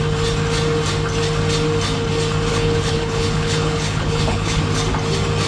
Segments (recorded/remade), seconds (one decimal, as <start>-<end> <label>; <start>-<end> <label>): 0.0-2.5 recorded; 2.5-4.6 remade; 4.6-5.5 recorded